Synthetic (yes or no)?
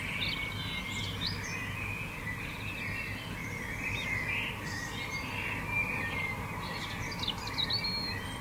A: no